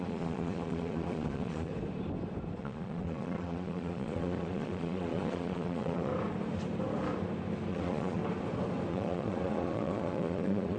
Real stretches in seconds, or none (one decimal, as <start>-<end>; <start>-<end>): 1.7-2.6; 6.1-7.7; 8.2-8.9